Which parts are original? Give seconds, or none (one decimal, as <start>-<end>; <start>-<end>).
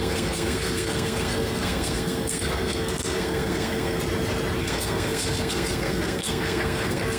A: 4.0-4.6